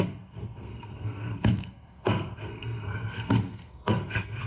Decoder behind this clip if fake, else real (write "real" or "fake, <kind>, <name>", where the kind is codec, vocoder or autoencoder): fake, codec, SNAC